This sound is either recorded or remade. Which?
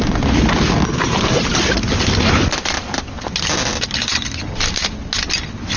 recorded